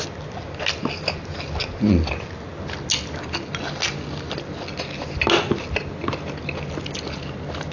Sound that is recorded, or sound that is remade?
recorded